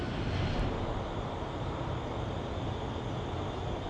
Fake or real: real